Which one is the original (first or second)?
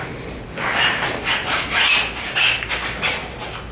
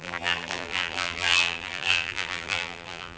first